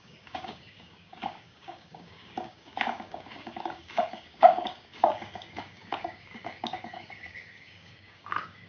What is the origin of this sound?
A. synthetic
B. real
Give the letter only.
A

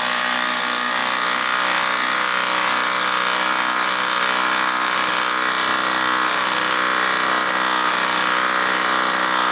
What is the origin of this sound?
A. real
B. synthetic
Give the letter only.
A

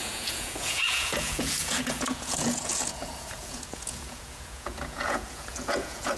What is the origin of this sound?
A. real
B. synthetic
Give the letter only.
B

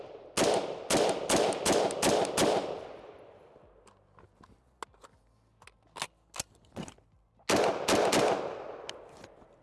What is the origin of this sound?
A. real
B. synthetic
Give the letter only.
A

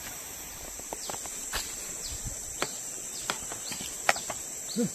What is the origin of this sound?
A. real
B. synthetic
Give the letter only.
A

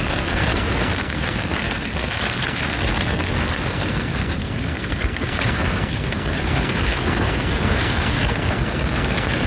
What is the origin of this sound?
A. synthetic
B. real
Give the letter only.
A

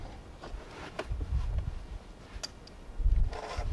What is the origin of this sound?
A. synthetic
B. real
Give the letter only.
B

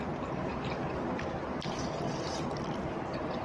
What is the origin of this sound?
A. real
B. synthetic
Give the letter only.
A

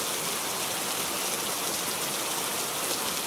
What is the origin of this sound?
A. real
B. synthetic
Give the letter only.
A